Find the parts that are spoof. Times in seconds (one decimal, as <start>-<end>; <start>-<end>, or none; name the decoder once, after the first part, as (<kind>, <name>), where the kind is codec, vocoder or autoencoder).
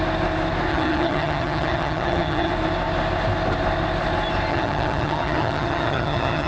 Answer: 0.7-2.5 (vocoder, HiFi-GAN); 4.5-6.5